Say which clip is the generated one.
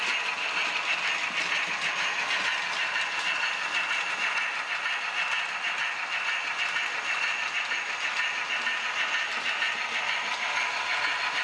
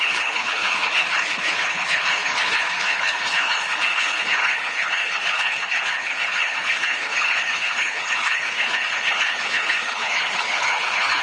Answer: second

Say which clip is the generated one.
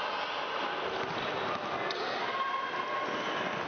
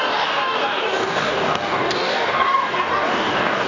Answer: second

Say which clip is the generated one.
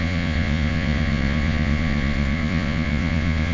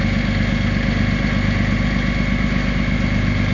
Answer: first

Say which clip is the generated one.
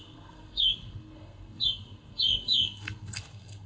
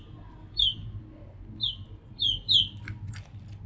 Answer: first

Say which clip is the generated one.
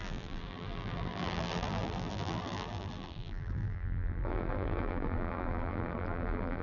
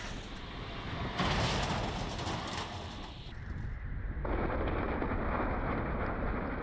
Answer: first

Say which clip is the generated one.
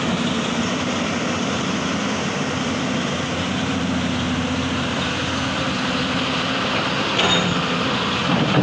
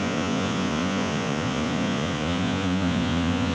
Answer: second